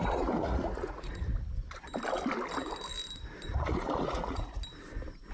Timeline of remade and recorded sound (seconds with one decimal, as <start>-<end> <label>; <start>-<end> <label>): 0.0-1.3 remade; 1.3-3.5 recorded; 3.5-4.6 remade; 4.6-5.3 recorded